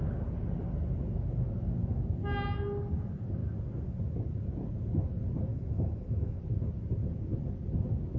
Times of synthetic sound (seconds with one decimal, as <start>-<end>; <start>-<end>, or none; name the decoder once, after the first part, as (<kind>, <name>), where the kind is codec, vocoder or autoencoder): 5.5-6.4 (autoencoder, DAC-VAE)